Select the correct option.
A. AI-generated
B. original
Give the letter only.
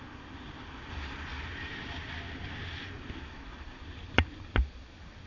B